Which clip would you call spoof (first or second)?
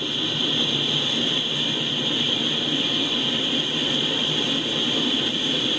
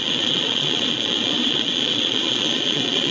second